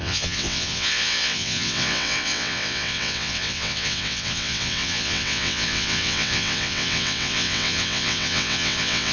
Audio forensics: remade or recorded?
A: remade